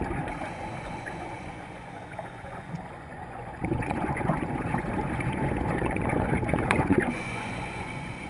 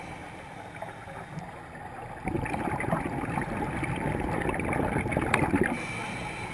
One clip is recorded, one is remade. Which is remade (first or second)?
first